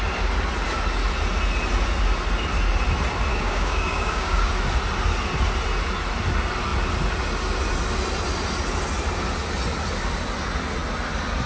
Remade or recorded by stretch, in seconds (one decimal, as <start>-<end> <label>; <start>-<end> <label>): 0.0-3.3 recorded; 3.3-4.5 remade; 4.5-11.5 recorded